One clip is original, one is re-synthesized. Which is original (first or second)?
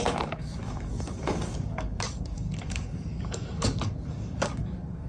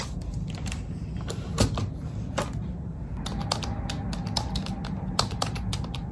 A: second